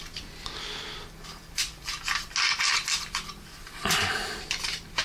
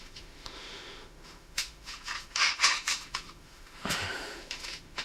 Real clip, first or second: first